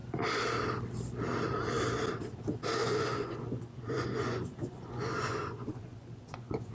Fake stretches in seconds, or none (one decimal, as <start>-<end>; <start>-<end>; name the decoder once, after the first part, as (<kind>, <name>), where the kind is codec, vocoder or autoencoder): 2.8-6.7 (vocoder, Vocos)